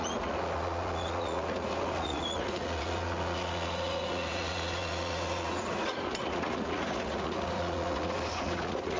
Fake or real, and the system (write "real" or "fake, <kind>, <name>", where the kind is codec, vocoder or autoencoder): fake, vocoder, Vocos